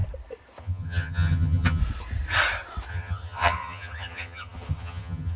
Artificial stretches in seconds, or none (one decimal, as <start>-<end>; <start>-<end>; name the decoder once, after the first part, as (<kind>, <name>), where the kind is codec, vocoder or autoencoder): 0.6-1.8 (vocoder, HiFi-GAN); 2.9-5.4

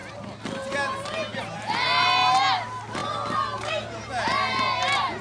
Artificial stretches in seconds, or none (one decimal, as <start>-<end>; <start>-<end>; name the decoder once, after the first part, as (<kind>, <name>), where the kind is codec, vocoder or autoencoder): none

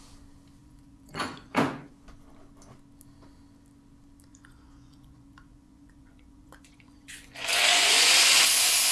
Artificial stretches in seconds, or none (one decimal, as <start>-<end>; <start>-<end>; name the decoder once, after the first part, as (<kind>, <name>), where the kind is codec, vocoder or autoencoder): 0.6-1.9 (vocoder, Vocos); 4.3-8.1